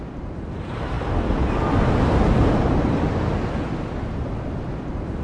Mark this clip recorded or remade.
recorded